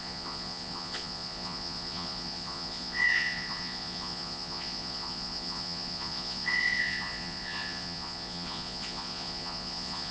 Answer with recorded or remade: remade